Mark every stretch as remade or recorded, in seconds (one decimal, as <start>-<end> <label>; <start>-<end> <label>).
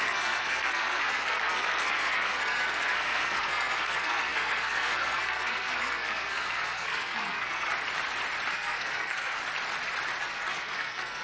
0.0-7.7 remade; 7.7-8.5 recorded; 8.5-9.4 remade; 9.4-10.2 recorded; 10.2-11.2 remade